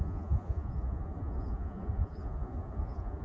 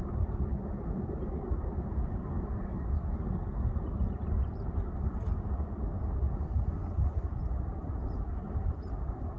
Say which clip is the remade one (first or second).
first